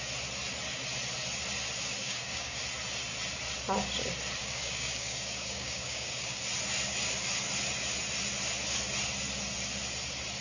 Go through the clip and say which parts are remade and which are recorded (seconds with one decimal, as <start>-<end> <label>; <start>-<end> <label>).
0.0-2.0 recorded; 2.0-2.6 remade; 2.6-4.4 recorded; 4.4-6.4 remade; 6.4-10.4 recorded